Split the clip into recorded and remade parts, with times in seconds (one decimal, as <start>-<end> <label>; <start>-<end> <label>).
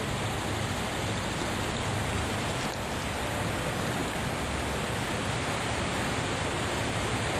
0.0-2.0 recorded; 2.0-2.6 remade; 2.6-7.4 recorded